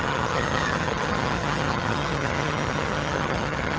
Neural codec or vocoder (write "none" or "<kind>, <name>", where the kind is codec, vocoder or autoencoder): vocoder, HiFi-GAN